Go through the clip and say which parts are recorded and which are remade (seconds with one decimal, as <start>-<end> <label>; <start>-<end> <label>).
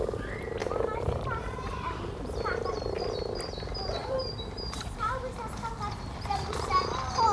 0.0-0.6 recorded; 0.6-3.0 remade; 3.0-4.0 recorded; 4.0-5.7 remade; 5.7-7.3 recorded